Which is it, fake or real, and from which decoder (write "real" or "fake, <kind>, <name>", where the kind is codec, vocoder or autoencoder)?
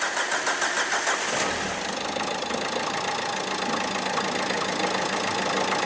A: real